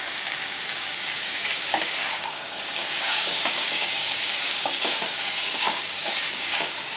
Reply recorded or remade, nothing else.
remade